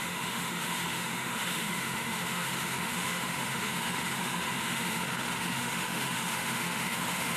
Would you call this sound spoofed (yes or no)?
yes